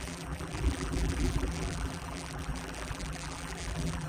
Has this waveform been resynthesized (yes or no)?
yes